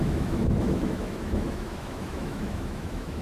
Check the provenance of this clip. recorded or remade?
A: remade